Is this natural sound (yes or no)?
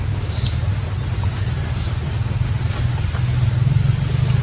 yes